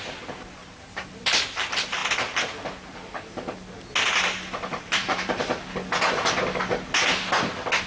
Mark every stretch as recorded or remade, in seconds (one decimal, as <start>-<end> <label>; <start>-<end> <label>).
0.0-0.6 recorded; 0.6-1.3 remade; 1.3-4.7 recorded; 4.7-5.4 remade; 5.4-7.9 recorded